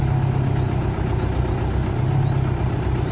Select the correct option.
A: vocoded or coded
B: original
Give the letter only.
B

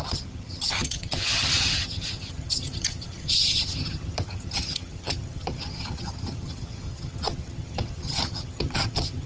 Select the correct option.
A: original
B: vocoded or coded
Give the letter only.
B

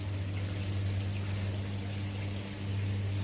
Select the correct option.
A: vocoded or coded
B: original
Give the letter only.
B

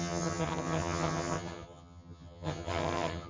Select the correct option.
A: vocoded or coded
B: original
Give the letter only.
A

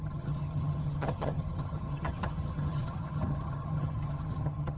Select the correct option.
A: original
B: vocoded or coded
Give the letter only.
B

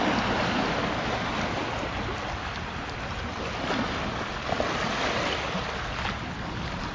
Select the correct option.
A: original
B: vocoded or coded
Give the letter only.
A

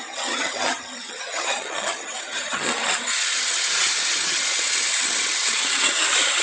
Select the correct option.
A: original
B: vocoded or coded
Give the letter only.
B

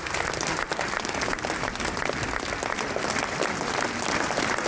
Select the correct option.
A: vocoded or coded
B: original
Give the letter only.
B